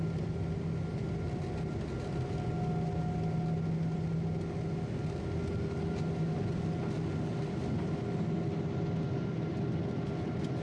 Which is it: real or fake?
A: real